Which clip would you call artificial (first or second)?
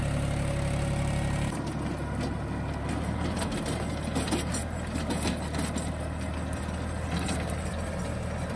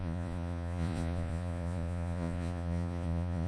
second